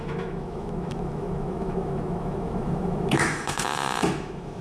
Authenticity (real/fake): fake